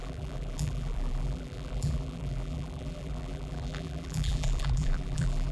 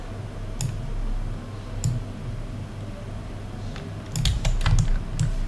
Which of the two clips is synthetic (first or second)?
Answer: first